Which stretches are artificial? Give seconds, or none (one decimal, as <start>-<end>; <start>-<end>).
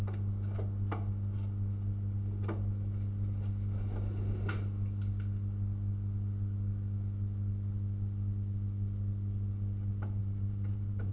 10.2-11.1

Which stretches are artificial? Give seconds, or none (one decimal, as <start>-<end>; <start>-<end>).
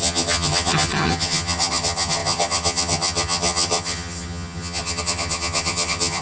0.0-6.2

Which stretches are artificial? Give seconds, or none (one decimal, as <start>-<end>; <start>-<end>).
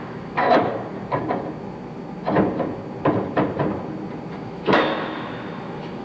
0.0-0.7; 4.3-6.0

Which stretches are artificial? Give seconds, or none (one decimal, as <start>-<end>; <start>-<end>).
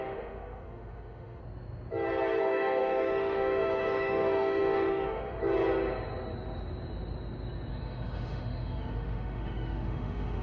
0.0-1.4; 2.4-5.4; 7.7-10.4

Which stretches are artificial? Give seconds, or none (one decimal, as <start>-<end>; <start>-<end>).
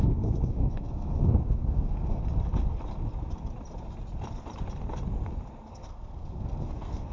0.0-2.2; 5.7-7.1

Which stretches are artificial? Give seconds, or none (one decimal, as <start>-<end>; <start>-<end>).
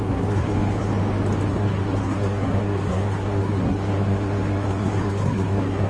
0.0-0.9; 1.5-5.9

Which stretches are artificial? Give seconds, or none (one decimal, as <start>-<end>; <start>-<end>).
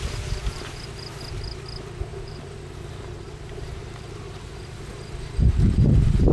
2.1-4.8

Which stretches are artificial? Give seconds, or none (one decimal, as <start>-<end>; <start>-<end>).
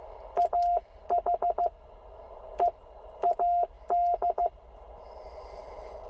none